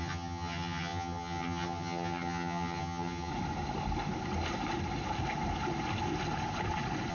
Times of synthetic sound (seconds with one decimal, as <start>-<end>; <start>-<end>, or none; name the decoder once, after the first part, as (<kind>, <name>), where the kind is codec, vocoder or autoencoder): 0.0-3.3 (vocoder, HiFi-GAN)